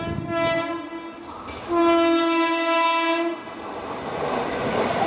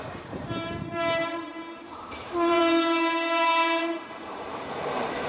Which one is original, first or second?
first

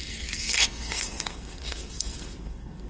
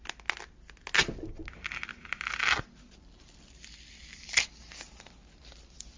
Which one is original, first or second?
second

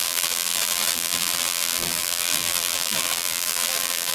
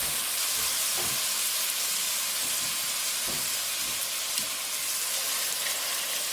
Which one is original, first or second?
second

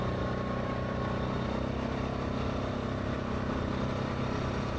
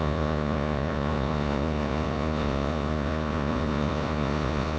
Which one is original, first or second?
first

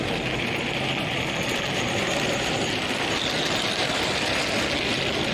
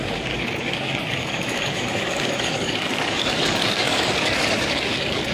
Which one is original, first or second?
first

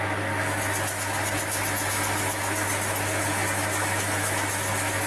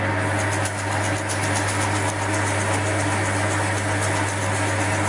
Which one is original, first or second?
second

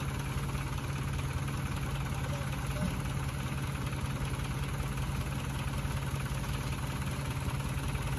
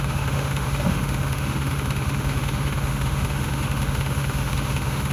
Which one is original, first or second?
first